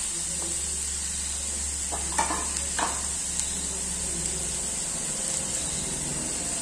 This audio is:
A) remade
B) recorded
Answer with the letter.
B